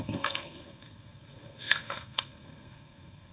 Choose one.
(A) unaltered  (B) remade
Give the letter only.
B